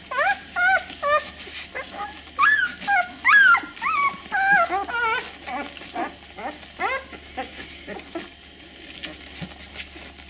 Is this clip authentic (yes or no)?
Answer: yes